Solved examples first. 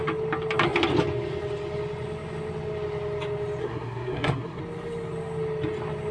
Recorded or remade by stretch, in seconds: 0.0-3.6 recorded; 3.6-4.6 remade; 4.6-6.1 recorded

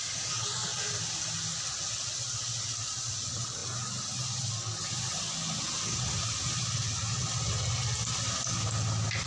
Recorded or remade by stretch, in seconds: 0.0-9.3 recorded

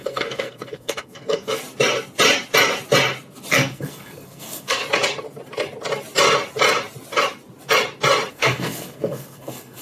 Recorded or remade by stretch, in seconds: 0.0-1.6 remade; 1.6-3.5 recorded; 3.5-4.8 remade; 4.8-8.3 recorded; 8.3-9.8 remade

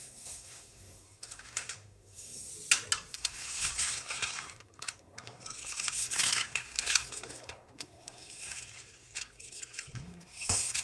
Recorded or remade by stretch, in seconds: 0.0-2.5 remade; 2.5-3.1 recorded; 3.1-10.8 remade

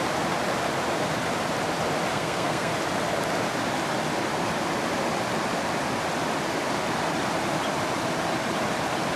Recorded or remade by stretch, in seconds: 0.0-2.1 recorded; 2.1-2.7 remade; 2.7-9.2 recorded